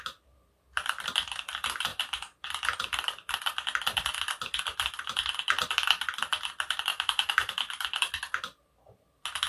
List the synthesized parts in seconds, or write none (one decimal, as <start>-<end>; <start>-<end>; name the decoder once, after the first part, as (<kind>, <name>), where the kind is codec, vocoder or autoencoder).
6.9-7.7 (autoencoder, DAC-VAE)